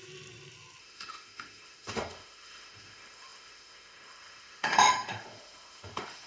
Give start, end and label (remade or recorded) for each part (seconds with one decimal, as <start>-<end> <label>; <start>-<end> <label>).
0.0-0.8 recorded; 0.8-6.3 remade